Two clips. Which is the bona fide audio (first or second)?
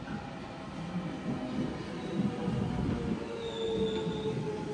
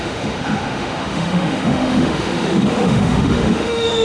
first